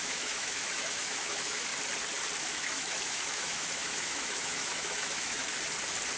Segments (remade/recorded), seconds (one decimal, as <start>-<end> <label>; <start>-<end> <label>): 0.0-1.7 remade; 1.7-2.4 recorded; 2.4-5.4 remade; 5.4-6.2 recorded